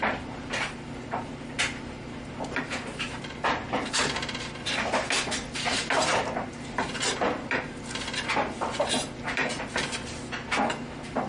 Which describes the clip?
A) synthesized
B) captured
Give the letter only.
A